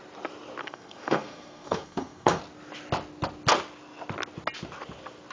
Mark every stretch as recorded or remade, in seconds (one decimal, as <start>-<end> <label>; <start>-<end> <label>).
0.0-0.6 recorded; 0.6-2.4 remade; 2.4-5.3 recorded